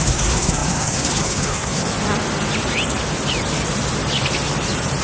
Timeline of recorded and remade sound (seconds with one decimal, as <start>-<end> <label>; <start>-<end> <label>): 0.0-1.8 remade; 1.8-5.0 recorded